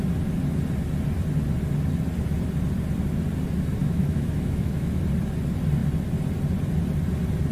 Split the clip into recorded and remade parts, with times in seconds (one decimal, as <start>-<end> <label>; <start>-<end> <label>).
0.0-3.8 recorded; 3.8-5.0 remade; 5.0-7.5 recorded